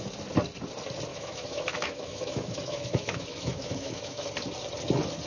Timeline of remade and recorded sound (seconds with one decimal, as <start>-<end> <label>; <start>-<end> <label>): 0.0-1.1 recorded; 1.1-4.3 remade; 4.3-5.3 recorded